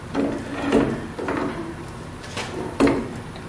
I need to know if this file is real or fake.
real